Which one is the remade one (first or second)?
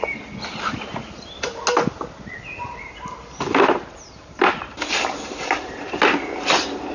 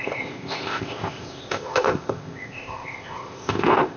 second